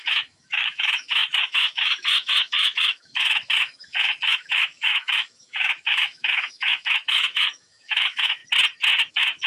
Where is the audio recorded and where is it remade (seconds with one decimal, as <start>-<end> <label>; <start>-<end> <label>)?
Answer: 0.0-8.4 remade; 8.4-9.1 recorded; 9.1-9.5 remade